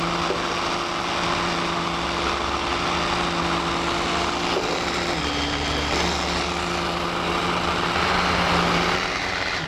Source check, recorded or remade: recorded